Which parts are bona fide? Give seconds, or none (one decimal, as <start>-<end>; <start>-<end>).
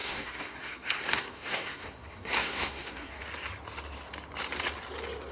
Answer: 3.2-5.3